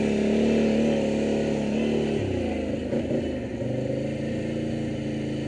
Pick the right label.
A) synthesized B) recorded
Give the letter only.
B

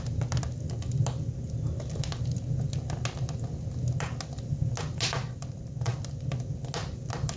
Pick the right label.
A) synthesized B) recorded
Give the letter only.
B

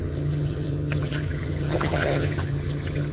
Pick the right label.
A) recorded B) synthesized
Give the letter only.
B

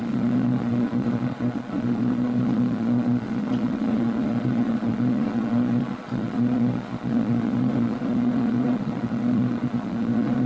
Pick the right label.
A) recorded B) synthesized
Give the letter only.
B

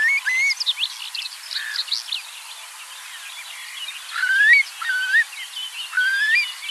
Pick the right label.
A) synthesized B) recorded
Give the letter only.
B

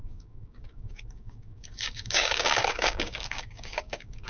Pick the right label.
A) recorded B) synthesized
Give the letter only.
B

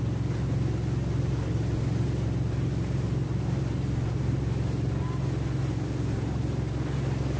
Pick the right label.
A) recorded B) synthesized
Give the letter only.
A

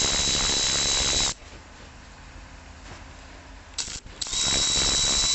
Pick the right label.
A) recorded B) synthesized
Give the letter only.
A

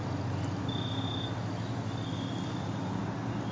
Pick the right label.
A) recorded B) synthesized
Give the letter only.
A